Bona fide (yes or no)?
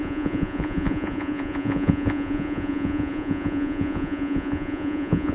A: no